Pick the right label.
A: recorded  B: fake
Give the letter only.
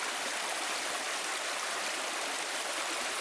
B